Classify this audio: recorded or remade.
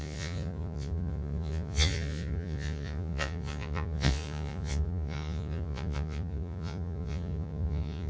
remade